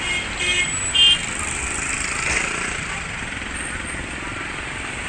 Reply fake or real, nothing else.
real